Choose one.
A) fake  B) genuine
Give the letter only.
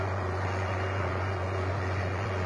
A